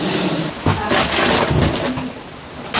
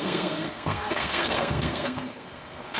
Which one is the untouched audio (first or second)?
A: first